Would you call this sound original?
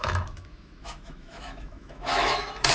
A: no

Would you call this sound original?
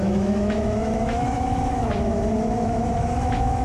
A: no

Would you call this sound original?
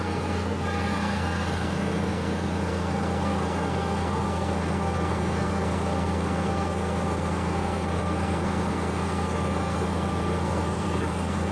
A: no